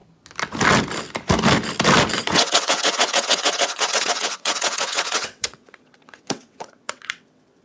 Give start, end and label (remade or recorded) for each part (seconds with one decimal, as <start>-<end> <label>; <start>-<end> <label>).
0.0-2.1 recorded; 2.1-7.6 remade